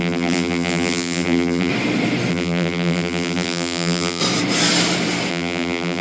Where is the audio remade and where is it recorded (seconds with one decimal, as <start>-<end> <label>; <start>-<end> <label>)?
0.0-1.7 remade; 1.7-2.3 recorded; 2.3-4.2 remade; 4.2-5.3 recorded; 5.3-6.0 remade